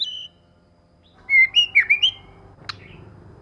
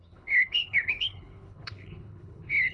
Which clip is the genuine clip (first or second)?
first